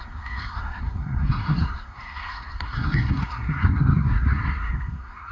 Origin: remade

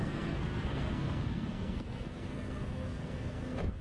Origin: remade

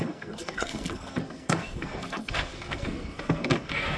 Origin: remade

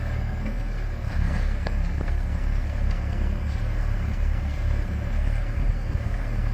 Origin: remade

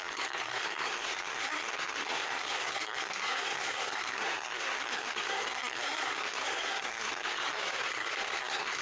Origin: remade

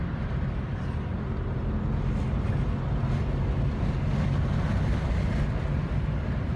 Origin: recorded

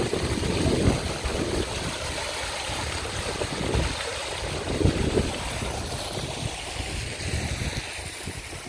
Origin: recorded